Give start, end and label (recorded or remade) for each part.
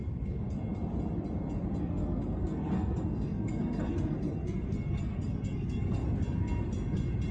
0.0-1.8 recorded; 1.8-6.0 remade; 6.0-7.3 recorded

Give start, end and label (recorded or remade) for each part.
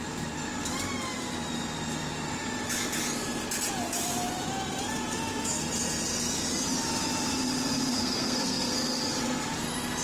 0.0-7.9 recorded; 7.9-9.0 remade; 9.0-10.0 recorded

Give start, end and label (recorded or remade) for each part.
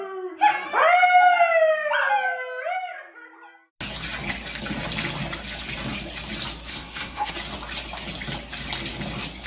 0.0-6.7 recorded; 6.7-7.3 remade; 7.3-9.5 recorded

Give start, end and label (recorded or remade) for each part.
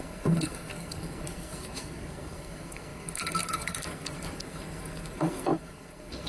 0.0-6.3 remade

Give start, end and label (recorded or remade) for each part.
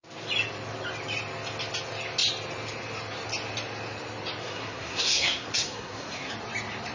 0.0-4.4 recorded; 4.4-6.3 remade; 6.3-6.9 recorded